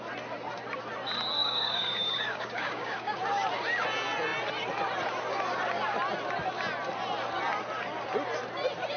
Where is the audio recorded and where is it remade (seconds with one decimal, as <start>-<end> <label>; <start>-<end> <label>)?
0.0-1.4 recorded; 1.4-3.2 remade; 3.2-9.0 recorded